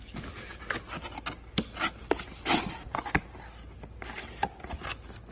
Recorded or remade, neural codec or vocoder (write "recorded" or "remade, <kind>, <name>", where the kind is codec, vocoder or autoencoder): recorded